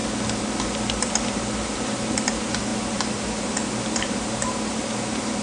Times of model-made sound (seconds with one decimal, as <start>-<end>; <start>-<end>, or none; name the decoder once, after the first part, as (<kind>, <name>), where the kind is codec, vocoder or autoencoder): 0.6-5.4 (vocoder, BigVGAN v2)